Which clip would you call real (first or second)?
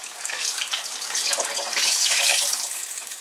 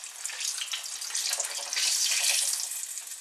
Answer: second